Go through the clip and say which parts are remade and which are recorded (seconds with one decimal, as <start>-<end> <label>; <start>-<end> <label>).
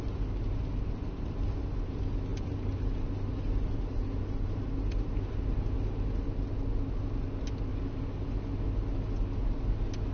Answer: 0.0-2.3 recorded; 2.3-2.9 remade; 2.9-10.1 recorded